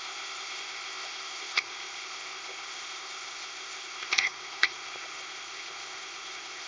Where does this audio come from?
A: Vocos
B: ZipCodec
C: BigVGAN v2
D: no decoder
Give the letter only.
B